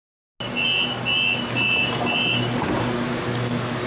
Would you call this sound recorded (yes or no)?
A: yes